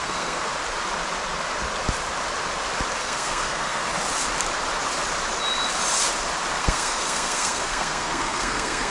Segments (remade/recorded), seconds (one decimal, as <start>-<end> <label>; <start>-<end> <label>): 0.0-0.5 remade; 0.5-3.0 recorded; 3.0-3.8 remade; 3.8-6.6 recorded; 6.6-8.9 remade